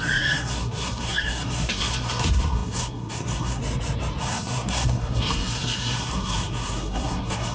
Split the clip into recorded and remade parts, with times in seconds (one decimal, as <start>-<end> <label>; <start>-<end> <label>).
0.0-3.6 remade; 3.6-4.2 recorded; 4.2-7.5 remade